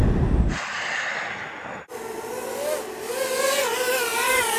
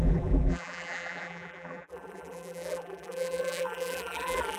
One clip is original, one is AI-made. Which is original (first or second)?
first